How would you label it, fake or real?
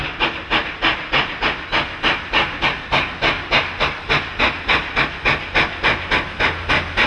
real